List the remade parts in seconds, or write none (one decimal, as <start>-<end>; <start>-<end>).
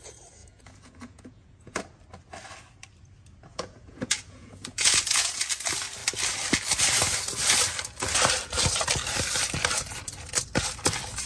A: 0.4-1.8; 3.5-5.4